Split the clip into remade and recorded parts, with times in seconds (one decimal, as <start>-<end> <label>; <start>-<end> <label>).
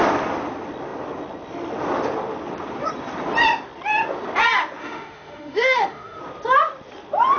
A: 0.0-4.8 recorded; 4.8-6.2 remade; 6.2-7.4 recorded